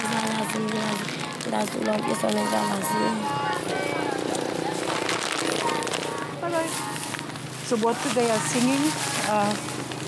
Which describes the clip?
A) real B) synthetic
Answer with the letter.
A